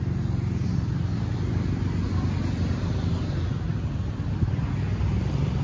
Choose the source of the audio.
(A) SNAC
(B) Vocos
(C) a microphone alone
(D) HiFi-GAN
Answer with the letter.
C